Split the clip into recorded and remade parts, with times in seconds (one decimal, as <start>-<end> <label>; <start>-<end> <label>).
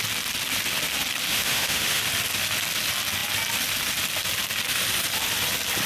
0.0-1.3 recorded; 1.3-2.0 remade; 2.0-5.9 recorded